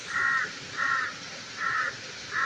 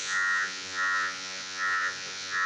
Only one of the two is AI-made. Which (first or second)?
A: second